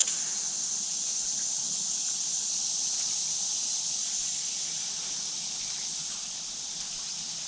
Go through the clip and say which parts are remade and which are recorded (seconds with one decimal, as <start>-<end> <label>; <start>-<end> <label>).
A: 0.0-2.5 remade; 2.5-4.0 recorded; 4.0-4.8 remade; 4.8-7.5 recorded